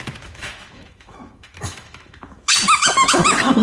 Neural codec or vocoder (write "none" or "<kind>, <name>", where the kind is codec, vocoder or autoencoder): autoencoder, DAC-VAE